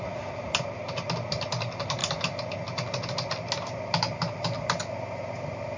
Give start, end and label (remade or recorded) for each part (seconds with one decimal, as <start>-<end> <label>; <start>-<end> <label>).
0.0-5.8 recorded